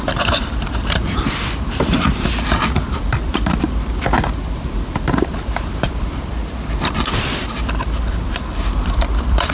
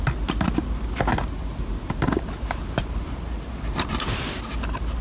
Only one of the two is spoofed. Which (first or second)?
first